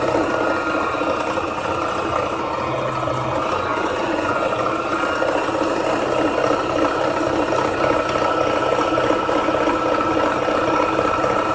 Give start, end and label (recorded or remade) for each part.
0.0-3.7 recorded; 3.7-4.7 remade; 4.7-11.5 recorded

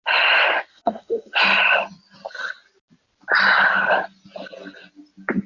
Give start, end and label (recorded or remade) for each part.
0.0-0.7 recorded; 0.7-1.4 remade; 1.4-5.5 recorded

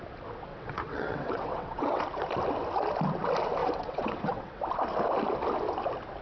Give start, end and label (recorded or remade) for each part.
0.0-0.5 recorded; 0.5-2.0 remade; 2.0-3.6 recorded; 3.6-4.6 remade; 4.6-6.2 recorded

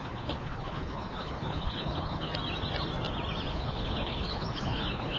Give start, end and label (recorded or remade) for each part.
0.0-2.3 remade; 2.3-3.5 recorded; 3.5-5.2 remade

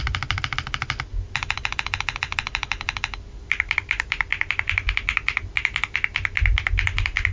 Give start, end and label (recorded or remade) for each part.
0.0-7.3 recorded